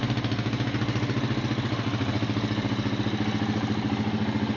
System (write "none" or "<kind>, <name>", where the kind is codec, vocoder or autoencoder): none